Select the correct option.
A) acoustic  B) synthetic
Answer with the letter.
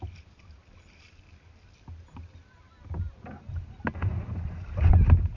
A